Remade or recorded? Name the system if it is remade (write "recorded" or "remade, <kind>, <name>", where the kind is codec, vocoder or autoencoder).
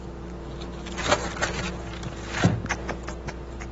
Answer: recorded